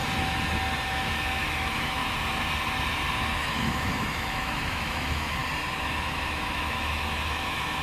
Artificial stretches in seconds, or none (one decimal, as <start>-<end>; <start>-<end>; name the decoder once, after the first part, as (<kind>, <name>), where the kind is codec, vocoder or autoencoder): 0.9-2.0 (autoencoder, DAC-VAE); 3.5-5.4; 5.9-7.8